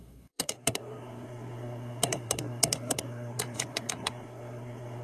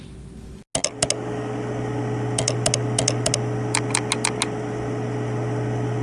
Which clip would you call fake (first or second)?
first